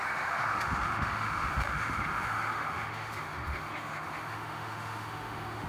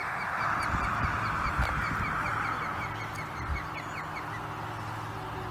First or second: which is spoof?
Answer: first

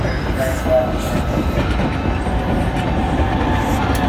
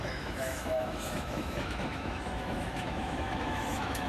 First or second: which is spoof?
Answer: second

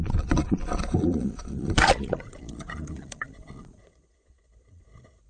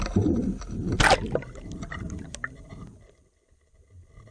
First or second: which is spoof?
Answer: first